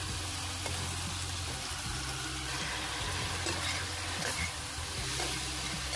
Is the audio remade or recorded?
recorded